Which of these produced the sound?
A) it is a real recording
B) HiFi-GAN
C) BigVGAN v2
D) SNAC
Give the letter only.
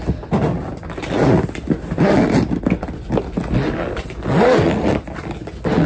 A